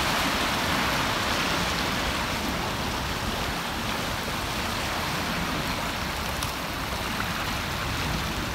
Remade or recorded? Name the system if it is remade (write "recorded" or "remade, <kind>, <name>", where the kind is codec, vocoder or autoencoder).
recorded